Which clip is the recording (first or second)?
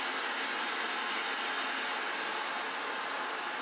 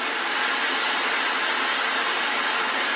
first